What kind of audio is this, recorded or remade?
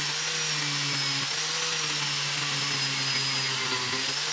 recorded